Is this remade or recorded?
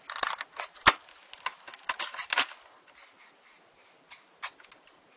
recorded